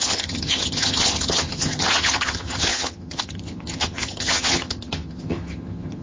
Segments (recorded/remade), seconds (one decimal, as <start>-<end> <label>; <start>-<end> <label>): 0.0-6.0 remade